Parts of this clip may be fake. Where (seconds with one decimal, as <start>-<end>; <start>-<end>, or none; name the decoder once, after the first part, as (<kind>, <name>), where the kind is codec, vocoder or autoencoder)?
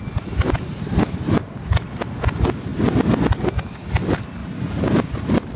4.4-5.6 (vocoder, BigVGAN v2)